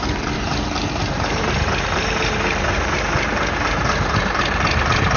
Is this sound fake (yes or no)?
yes